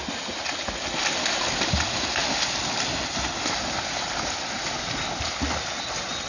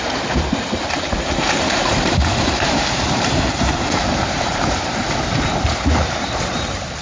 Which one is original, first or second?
first